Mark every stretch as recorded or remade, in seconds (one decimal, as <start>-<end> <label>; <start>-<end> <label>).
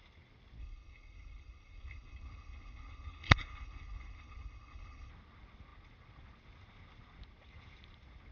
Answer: 0.0-0.6 recorded; 0.6-5.1 remade; 5.1-8.3 recorded